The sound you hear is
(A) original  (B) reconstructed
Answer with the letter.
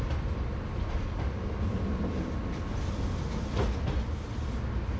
A